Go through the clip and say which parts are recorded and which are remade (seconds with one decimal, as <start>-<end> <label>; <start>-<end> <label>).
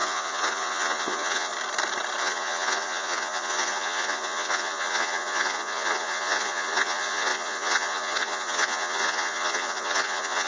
0.0-1.5 remade; 1.5-2.2 recorded; 2.2-10.5 remade